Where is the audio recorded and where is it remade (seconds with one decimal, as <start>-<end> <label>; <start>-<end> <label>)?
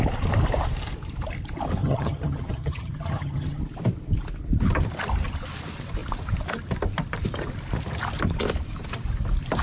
0.0-1.8 recorded; 1.8-3.6 remade; 3.6-9.6 recorded